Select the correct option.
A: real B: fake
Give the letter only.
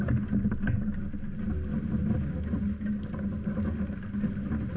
A